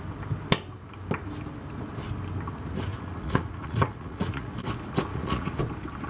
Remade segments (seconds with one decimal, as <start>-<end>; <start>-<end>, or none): 2.9-4.5; 5.1-5.6